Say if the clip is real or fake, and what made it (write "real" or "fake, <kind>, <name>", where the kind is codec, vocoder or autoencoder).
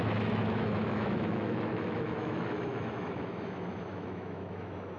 fake, autoencoder, DAC-VAE